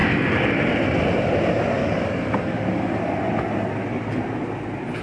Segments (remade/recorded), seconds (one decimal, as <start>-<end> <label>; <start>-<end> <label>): 0.0-1.8 recorded; 1.8-3.0 remade; 3.0-5.0 recorded